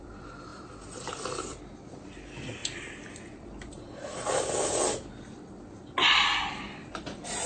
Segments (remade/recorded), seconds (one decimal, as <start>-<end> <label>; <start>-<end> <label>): 0.0-7.5 recorded